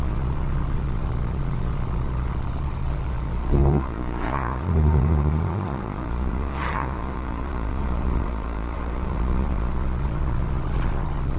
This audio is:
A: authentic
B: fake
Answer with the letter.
B